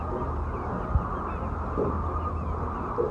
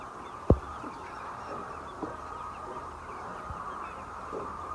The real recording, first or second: first